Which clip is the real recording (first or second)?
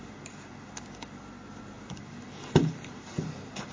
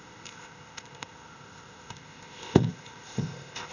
first